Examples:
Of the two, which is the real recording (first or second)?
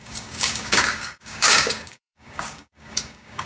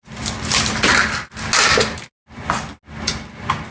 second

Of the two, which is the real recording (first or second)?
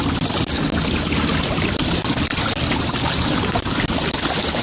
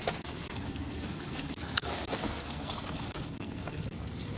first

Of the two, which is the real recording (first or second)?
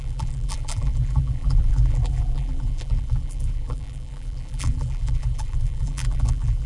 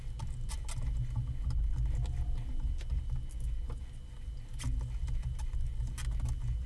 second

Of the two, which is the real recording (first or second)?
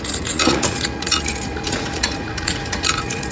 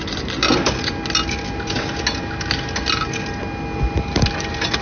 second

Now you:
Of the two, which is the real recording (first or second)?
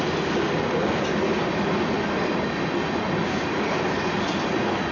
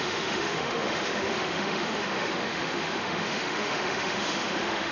first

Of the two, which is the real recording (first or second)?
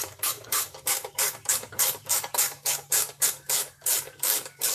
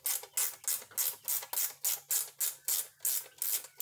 second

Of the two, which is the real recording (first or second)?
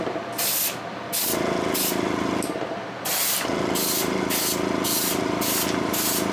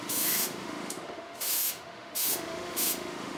first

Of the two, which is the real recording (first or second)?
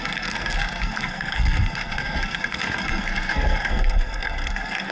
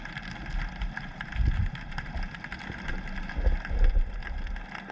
second